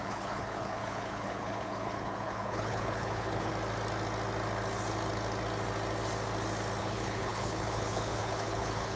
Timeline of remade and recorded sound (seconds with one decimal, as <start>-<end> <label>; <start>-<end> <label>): 0.0-3.5 remade; 3.5-6.8 recorded; 6.8-9.0 remade